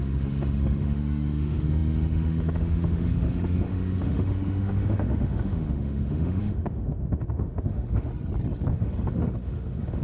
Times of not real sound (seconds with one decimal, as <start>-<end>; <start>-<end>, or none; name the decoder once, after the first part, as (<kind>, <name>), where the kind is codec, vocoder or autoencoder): 0.0-8.1 (autoencoder, DAC-VAE); 8.7-10.0